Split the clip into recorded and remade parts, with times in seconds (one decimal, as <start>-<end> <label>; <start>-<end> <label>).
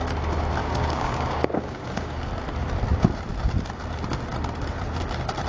0.0-0.6 recorded; 0.6-2.3 remade; 2.3-5.5 recorded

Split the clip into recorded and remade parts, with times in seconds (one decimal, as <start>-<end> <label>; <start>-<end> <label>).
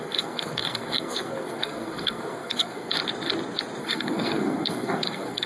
0.0-2.9 remade; 2.9-3.8 recorded; 3.8-5.5 remade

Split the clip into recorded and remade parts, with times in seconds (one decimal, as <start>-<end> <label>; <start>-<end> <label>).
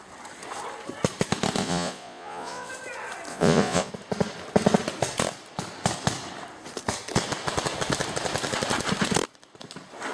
0.0-1.6 recorded; 1.6-2.7 remade; 2.7-3.3 recorded; 3.3-3.9 remade; 3.9-10.1 recorded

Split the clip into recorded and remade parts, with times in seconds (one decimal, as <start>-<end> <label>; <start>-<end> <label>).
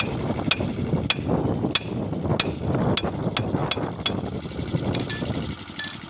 0.0-6.1 recorded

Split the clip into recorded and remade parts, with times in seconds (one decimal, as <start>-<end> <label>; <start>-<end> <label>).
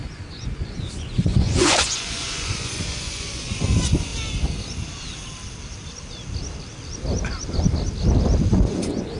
0.0-4.1 remade; 4.1-8.5 recorded; 8.5-9.2 remade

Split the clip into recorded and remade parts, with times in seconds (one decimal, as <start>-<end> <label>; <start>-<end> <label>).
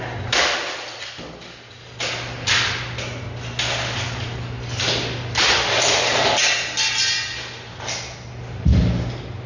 0.0-9.5 recorded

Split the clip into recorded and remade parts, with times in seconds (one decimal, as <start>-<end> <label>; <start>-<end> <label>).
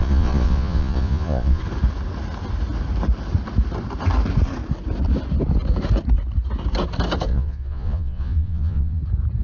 0.0-1.6 remade; 1.6-7.3 recorded; 7.3-9.0 remade; 9.0-9.4 recorded